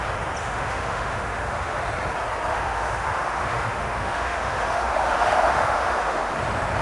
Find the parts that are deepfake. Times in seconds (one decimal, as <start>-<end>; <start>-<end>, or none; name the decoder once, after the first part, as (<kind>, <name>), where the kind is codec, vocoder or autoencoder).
0.4-1.8 (autoencoder, DAC-VAE); 2.5-6.3